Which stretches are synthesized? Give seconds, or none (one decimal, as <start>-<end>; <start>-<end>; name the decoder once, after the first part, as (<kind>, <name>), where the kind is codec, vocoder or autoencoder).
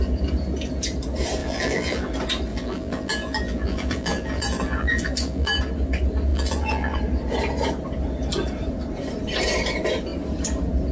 1.4-2.1 (vocoder, BigVGAN v2); 2.5-5.6; 6.3-7.0